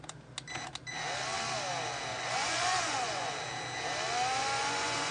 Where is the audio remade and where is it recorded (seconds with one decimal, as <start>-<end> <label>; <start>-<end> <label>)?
0.0-2.1 recorded; 2.1-3.3 remade; 3.3-4.3 recorded; 4.3-5.1 remade